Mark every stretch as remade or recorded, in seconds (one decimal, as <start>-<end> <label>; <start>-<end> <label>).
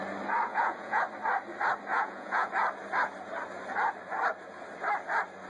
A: 0.0-0.5 recorded; 0.5-1.0 remade; 1.0-1.9 recorded; 1.9-2.5 remade; 2.5-5.5 recorded